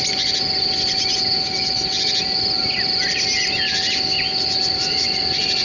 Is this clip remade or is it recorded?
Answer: recorded